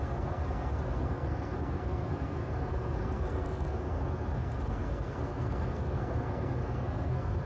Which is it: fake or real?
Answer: fake